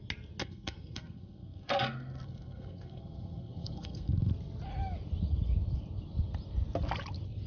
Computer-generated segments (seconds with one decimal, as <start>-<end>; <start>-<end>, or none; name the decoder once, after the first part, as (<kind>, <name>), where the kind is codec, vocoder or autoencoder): 0.4-4.3 (codec, SNAC)